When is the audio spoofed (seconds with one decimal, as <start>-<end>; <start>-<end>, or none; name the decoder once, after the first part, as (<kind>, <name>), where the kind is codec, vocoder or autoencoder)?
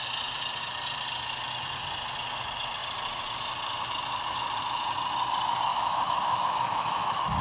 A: 5.7-7.4 (autoencoder, DAC-VAE)